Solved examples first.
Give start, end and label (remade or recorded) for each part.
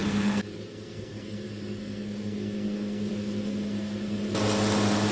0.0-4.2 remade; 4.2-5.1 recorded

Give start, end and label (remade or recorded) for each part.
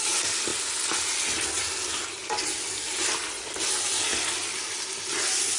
0.0-5.6 recorded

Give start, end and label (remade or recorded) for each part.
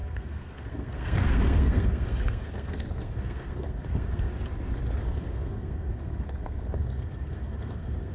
0.0-4.3 remade; 4.3-5.0 recorded; 5.0-8.1 remade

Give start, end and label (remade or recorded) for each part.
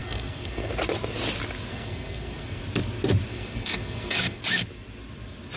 0.0-0.7 remade; 0.7-1.7 recorded; 1.7-2.6 remade; 2.6-3.3 recorded; 3.3-4.4 remade; 4.4-5.6 recorded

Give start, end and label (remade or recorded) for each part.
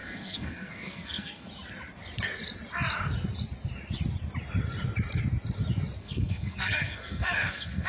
0.0-1.5 remade; 1.5-6.0 recorded; 6.0-7.9 remade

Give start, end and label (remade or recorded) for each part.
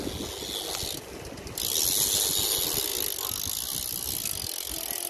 0.0-5.1 recorded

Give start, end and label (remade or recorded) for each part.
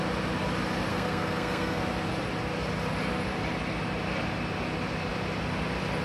0.0-0.9 recorded; 0.9-1.8 remade; 1.8-6.0 recorded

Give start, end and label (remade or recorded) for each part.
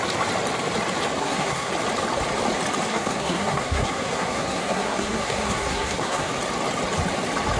0.0-1.2 recorded; 1.2-1.7 remade; 1.7-2.9 recorded; 2.9-6.3 remade; 6.3-7.6 recorded